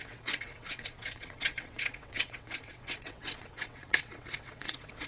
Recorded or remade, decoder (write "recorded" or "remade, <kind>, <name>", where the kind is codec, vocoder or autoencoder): remade, vocoder, WaveNeXt